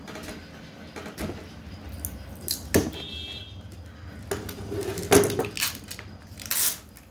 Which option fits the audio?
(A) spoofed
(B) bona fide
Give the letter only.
B